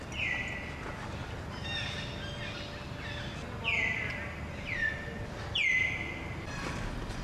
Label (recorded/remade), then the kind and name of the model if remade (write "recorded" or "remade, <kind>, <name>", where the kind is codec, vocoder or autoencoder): recorded